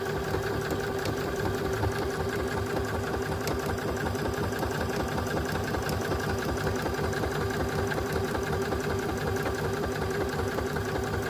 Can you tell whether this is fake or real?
real